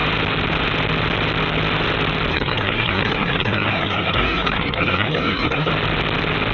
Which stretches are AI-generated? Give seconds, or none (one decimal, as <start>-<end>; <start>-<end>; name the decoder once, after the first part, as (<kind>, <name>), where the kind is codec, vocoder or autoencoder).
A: 2.3-5.7 (codec, SNAC)